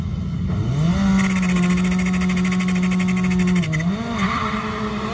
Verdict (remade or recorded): recorded